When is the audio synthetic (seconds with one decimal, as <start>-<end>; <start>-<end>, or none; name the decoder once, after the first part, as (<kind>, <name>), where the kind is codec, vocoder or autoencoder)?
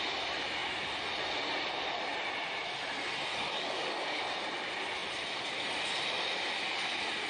3.3-4.2 (codec, DAC)